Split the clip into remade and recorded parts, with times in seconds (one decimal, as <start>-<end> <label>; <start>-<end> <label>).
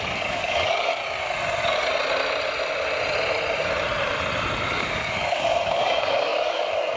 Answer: 0.0-1.0 remade; 1.0-4.7 recorded; 4.7-7.0 remade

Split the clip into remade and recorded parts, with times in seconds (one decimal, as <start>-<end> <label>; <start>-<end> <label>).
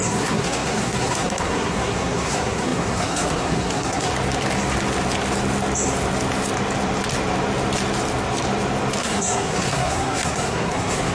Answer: 0.0-4.1 remade; 4.1-9.0 recorded; 9.0-11.1 remade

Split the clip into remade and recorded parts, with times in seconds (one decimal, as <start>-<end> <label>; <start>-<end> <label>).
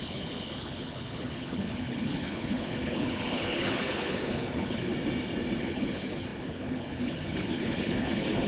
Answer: 0.0-4.9 remade; 4.9-5.6 recorded; 5.6-8.5 remade